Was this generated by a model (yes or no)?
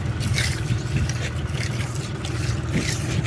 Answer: no